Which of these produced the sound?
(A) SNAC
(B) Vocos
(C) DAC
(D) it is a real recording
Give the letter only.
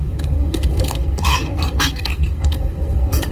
A